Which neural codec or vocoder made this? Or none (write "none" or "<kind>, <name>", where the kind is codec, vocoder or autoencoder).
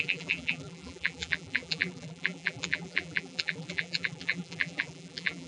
vocoder, BigVGAN v2